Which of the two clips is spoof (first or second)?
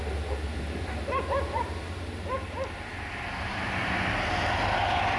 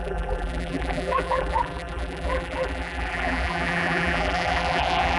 second